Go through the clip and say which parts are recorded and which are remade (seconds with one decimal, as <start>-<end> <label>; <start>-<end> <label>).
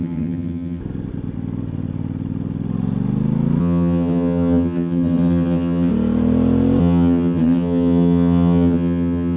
0.0-0.8 remade; 0.8-3.6 recorded; 3.6-5.9 remade; 5.9-6.8 recorded; 6.8-9.4 remade